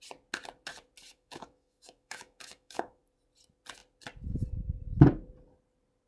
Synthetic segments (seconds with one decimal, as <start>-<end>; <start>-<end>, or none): 1.1-3.0